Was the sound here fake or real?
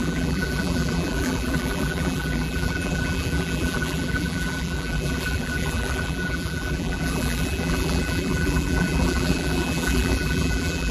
fake